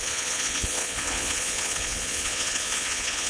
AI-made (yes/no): yes